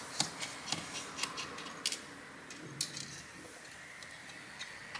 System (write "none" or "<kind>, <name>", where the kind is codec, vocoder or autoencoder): none